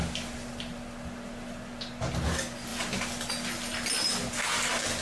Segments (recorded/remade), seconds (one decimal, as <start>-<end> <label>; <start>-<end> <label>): 0.0-5.0 recorded